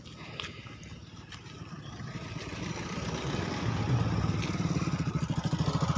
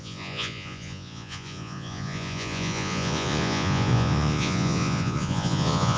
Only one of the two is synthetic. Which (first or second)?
second